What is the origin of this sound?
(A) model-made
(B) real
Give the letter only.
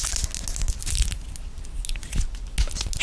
B